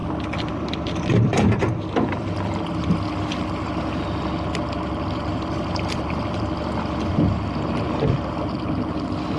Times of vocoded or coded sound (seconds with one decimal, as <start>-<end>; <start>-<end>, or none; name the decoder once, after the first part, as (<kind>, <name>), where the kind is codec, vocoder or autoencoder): 0.0-4.0 (vocoder, BigVGAN v2); 5.3-7.1